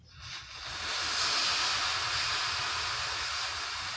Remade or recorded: recorded